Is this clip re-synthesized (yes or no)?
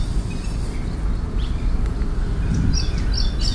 no